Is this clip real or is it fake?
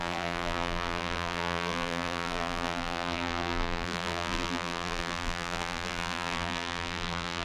fake